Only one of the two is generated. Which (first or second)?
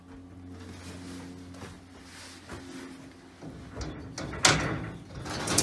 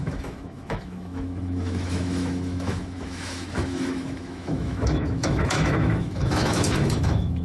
second